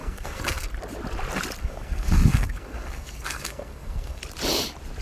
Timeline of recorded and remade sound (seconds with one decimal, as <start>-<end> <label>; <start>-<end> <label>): 0.0-0.7 remade; 0.7-1.6 recorded; 1.6-4.2 remade; 4.2-5.0 recorded